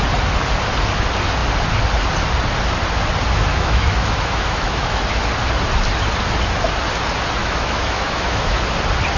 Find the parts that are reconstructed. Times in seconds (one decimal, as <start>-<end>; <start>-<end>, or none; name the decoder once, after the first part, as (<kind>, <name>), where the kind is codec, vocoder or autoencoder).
3.5-5.0 (autoencoder, DAC-VAE); 7.4-8.6